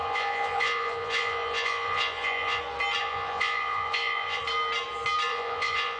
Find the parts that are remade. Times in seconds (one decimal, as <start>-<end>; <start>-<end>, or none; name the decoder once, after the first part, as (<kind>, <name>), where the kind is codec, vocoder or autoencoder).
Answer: 0.0-2.6 (vocoder, Vocos); 3.0-4.4; 5.3-6.0